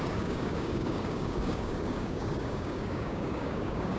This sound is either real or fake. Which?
fake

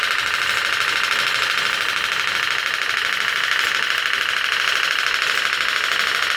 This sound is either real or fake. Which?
real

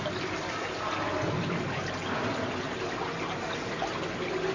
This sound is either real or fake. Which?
real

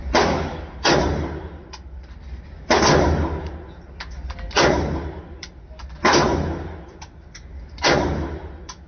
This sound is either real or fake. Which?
real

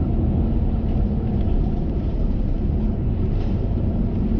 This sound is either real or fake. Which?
fake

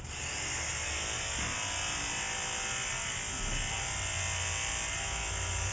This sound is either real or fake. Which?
real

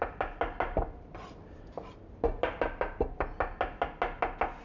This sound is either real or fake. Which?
real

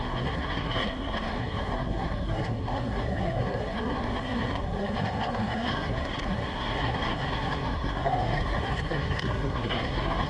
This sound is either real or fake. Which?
fake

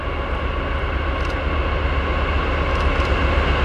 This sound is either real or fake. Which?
real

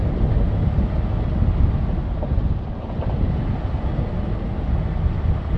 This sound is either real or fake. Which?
real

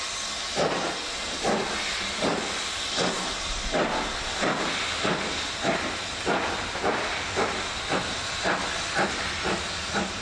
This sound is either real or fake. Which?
real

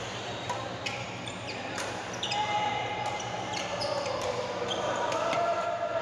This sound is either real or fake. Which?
fake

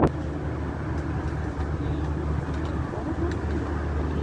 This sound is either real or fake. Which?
real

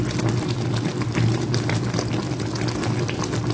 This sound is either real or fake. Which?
real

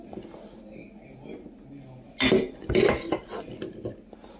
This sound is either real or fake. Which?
real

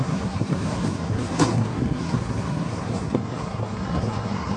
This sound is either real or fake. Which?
fake